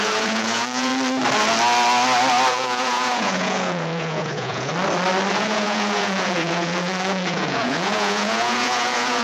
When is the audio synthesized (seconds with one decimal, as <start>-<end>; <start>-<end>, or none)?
0.0-0.9; 2.5-4.7; 5.3-9.2